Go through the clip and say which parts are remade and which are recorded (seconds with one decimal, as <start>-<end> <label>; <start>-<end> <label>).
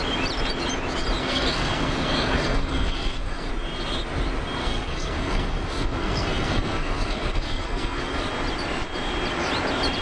0.0-1.2 recorded; 1.2-3.5 remade; 3.5-4.6 recorded; 4.6-8.2 remade; 8.2-10.0 recorded